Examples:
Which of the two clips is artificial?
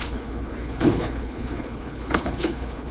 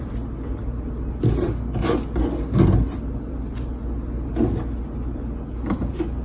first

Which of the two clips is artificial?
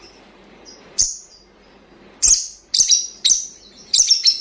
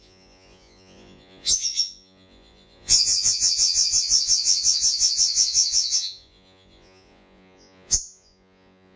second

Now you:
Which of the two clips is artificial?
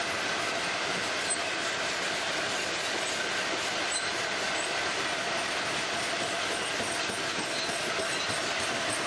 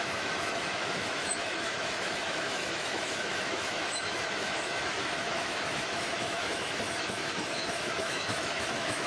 second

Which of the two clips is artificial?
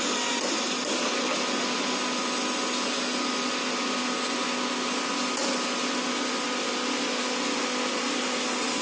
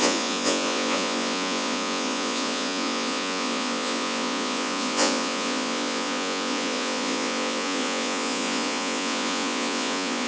second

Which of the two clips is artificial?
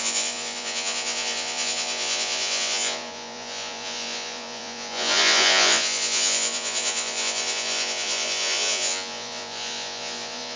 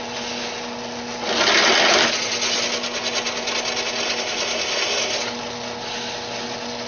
first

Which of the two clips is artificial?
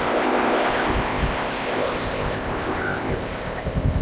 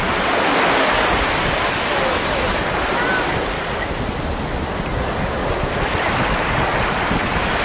first